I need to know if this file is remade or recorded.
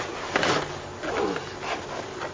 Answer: recorded